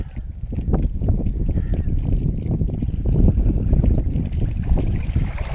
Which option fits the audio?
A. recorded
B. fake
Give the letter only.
B